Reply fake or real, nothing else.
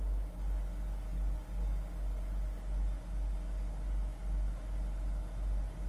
real